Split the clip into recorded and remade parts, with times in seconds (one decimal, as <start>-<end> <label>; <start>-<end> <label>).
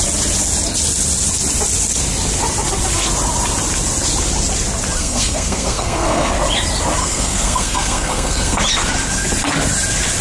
0.0-5.0 recorded; 5.0-6.3 remade; 6.3-7.0 recorded; 7.0-8.6 remade; 8.6-10.2 recorded